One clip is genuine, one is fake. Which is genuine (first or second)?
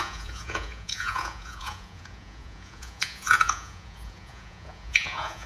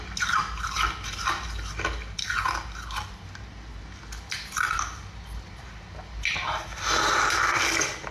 second